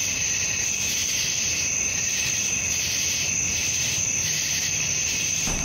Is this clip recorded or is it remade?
remade